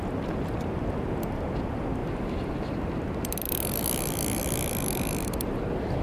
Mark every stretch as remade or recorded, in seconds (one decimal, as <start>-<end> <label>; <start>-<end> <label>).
0.0-6.0 recorded